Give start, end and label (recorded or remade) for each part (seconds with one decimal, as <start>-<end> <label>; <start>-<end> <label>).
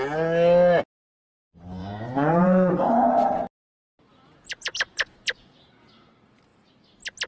0.0-1.8 recorded; 1.8-2.7 remade; 2.7-4.1 recorded; 4.1-6.1 remade; 6.1-7.3 recorded